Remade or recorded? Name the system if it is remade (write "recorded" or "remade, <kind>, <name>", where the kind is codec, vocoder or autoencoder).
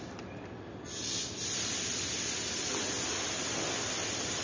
recorded